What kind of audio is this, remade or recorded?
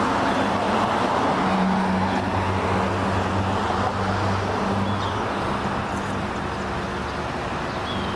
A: recorded